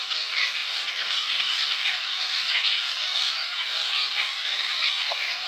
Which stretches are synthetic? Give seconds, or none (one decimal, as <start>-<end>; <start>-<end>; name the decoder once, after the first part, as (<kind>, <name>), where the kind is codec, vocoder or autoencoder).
0.0-5.5 (codec, DAC)